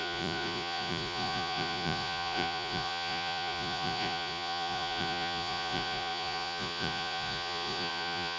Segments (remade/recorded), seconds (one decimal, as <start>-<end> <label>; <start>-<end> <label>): 0.0-8.4 remade